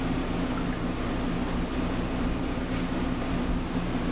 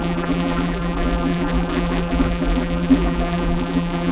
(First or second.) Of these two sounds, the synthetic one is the second